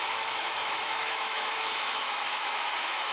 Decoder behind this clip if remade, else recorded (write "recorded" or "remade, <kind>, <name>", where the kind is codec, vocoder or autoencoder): remade, autoencoder, DAC-VAE